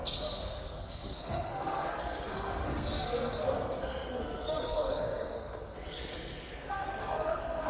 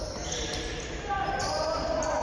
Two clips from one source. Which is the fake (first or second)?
first